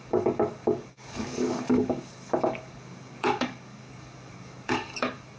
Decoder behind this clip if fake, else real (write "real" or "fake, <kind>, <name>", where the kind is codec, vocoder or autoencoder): fake, codec, DAC